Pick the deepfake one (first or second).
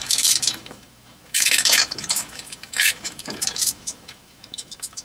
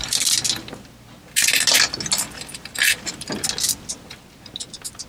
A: first